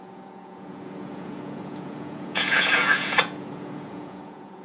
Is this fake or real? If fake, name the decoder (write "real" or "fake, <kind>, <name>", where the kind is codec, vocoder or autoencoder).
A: fake, vocoder, Vocos